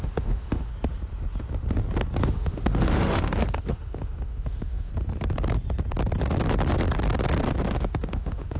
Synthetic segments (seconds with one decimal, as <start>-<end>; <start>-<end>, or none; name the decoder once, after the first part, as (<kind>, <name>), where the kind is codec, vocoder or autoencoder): 0.0-0.7 (autoencoder, DAC-VAE); 2.2-4.9; 7.7-8.6